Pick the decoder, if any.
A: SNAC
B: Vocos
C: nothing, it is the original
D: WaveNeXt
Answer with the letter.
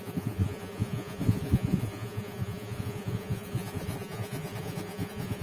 B